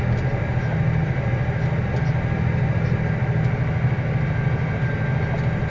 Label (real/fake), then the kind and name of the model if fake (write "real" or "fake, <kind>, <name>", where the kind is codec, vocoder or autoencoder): real